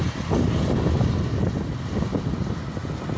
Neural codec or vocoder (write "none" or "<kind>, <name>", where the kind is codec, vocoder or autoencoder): none